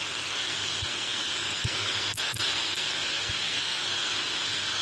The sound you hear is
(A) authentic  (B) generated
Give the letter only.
B